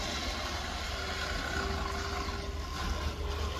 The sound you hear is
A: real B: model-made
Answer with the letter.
A